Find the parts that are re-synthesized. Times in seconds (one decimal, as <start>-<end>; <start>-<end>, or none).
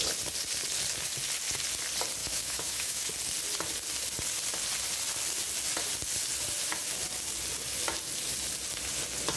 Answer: 2.2-3.1